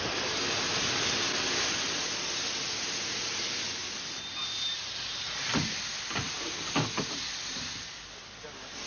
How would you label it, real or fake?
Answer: real